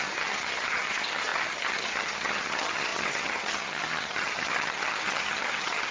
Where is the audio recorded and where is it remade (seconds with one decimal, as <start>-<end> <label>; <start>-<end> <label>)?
0.0-5.9 remade